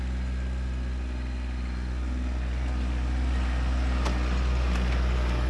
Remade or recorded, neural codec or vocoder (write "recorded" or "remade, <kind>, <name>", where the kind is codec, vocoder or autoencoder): recorded